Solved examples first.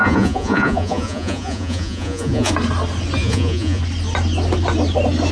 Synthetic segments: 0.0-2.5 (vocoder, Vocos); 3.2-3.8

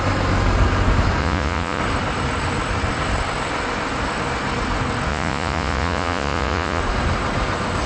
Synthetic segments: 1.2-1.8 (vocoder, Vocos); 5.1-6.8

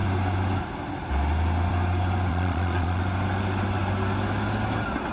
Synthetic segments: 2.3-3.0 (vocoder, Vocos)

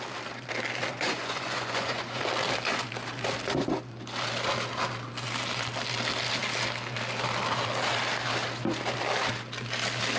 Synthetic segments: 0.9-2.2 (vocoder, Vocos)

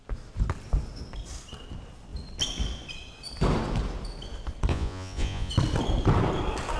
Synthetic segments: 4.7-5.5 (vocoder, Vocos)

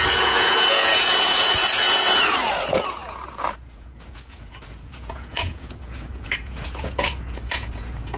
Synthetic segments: 0.0-8.2 (vocoder, Vocos)

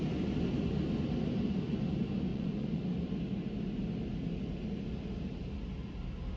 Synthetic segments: 2.3-2.8 (vocoder, Vocos)

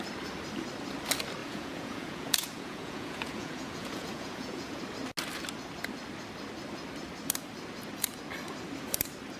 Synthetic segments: 1.4-4.8 (vocoder, Vocos)